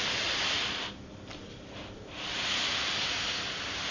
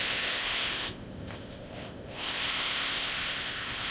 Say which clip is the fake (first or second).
second